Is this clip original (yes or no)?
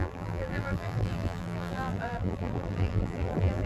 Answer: no